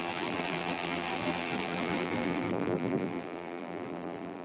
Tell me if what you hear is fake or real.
fake